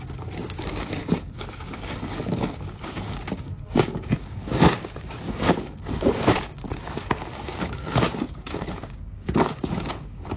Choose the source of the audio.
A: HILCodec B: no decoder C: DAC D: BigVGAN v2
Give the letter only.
C